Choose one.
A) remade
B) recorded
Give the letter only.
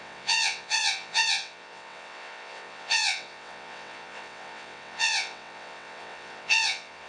A